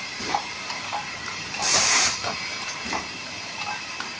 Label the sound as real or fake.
fake